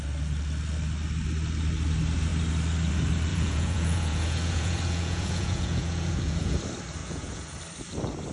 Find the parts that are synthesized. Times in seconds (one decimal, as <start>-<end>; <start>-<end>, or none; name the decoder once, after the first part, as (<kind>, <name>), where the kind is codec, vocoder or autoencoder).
3.3-6.6 (vocoder, Vocos); 7.0-7.6